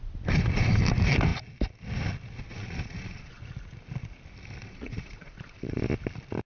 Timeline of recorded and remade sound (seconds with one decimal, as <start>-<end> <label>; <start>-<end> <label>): 0.0-2.5 recorded; 2.5-3.4 remade; 3.4-4.6 recorded; 4.6-5.8 remade; 5.8-6.5 recorded